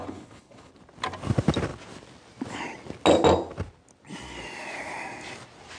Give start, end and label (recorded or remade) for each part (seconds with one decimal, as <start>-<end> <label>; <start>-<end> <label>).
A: 0.0-0.7 remade; 0.7-5.8 recorded